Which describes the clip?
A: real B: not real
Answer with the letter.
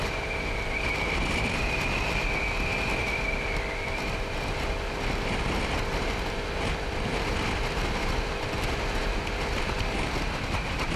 A